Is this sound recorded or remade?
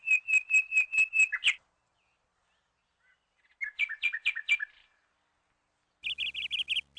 recorded